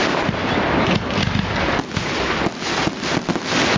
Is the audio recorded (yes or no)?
yes